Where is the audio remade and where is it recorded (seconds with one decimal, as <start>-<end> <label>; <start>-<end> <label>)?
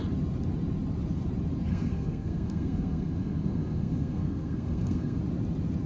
0.0-1.7 recorded; 1.7-5.2 remade; 5.2-5.9 recorded